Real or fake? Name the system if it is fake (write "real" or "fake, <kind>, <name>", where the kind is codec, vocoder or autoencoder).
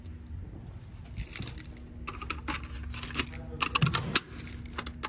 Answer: real